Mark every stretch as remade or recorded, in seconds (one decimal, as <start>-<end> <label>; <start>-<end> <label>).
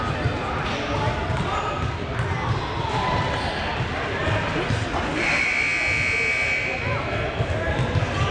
0.0-8.3 recorded